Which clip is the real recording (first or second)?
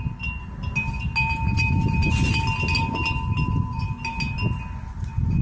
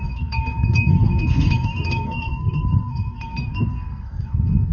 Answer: first